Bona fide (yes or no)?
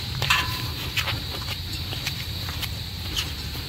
no